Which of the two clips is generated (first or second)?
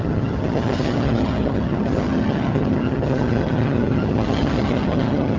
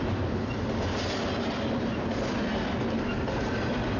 first